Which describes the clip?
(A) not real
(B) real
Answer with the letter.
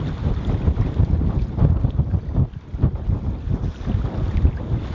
B